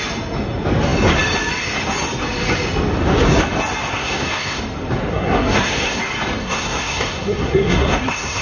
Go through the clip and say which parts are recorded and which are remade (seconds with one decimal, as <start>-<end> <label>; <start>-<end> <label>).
0.0-3.9 recorded; 3.9-4.6 remade; 4.6-5.1 recorded; 5.1-6.0 remade; 6.0-6.4 recorded; 6.4-8.4 remade